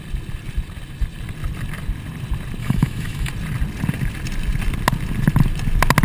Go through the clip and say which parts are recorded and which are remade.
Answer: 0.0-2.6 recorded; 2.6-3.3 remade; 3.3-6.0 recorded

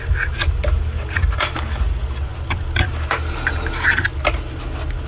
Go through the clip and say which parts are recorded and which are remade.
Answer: 0.0-5.1 recorded